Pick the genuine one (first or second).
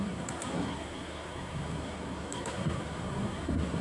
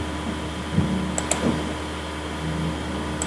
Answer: second